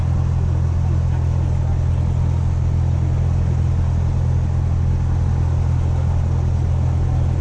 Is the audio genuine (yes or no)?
yes